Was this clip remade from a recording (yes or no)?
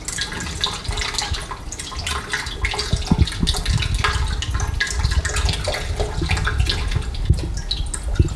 no